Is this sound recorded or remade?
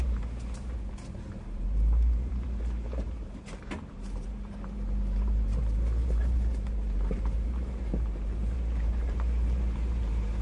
remade